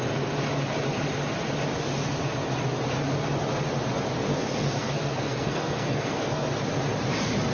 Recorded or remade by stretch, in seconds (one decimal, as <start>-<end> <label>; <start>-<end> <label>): 0.0-4.3 recorded; 4.3-6.5 remade; 6.5-7.5 recorded